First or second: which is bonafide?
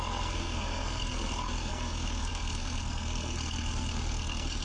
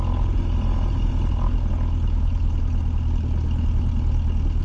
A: second